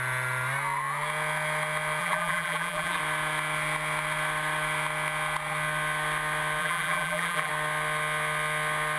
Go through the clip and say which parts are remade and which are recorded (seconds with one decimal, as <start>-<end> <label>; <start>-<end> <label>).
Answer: 0.0-2.0 recorded; 2.0-3.0 remade; 3.0-6.6 recorded; 6.6-7.5 remade; 7.5-9.0 recorded